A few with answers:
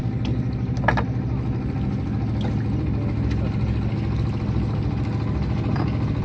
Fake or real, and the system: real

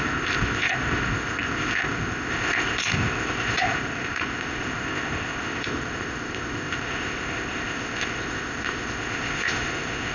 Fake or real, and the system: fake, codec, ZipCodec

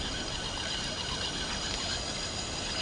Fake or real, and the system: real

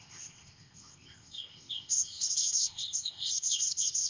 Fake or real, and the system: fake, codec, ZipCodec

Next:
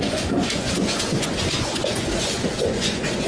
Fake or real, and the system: fake, vocoder, Vocos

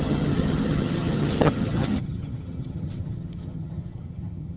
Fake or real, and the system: fake, vocoder, HiFi-GAN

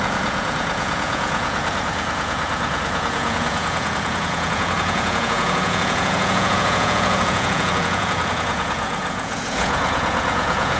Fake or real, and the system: fake, vocoder, Vocos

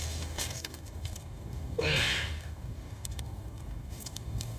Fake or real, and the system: fake, codec, DAC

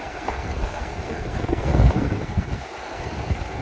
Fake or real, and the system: fake, codec, SNAC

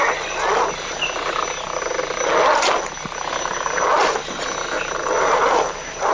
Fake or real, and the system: real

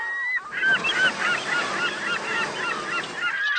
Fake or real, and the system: real